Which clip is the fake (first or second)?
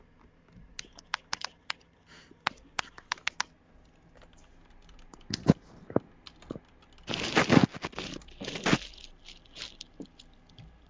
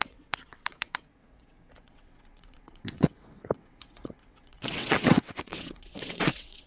second